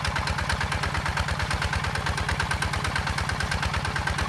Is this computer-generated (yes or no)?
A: no